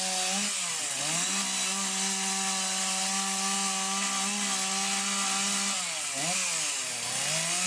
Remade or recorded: recorded